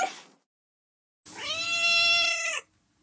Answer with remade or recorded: recorded